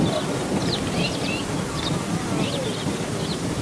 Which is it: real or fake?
real